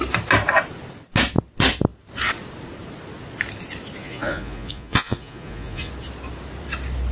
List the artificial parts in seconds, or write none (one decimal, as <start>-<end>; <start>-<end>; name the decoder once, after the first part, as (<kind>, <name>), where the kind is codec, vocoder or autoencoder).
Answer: 4.0-5.9 (vocoder, Vocos)

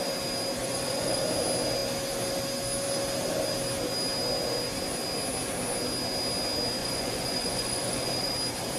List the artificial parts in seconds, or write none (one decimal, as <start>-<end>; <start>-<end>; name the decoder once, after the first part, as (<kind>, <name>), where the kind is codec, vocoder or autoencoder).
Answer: 0.6-1.2 (vocoder, Vocos); 6.8-8.3